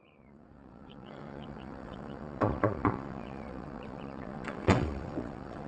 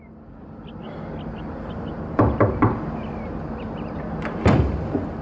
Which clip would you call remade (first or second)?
first